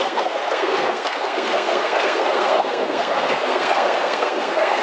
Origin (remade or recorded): remade